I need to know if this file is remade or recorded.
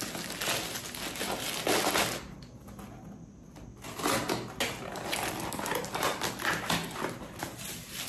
recorded